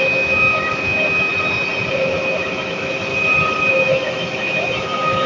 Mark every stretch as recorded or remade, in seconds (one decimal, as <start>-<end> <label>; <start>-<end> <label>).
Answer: 0.0-1.3 remade; 1.3-1.9 recorded; 1.9-3.1 remade; 3.1-3.7 recorded; 3.7-5.3 remade